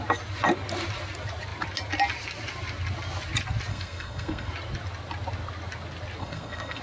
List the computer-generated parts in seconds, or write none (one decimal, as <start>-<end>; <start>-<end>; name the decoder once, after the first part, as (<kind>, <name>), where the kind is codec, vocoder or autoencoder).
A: 3.7-4.5 (codec, SNAC); 6.2-6.8